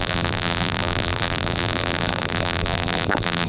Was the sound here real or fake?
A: fake